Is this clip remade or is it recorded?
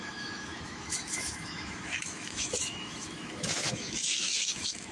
remade